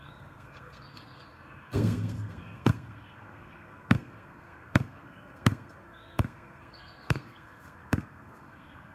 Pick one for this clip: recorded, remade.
remade